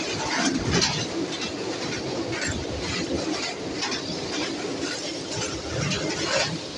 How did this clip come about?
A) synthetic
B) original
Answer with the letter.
B